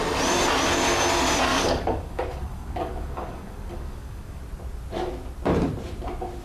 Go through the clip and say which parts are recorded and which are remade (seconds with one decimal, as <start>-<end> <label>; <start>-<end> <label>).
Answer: 0.0-1.5 recorded; 1.5-4.4 remade; 4.4-6.4 recorded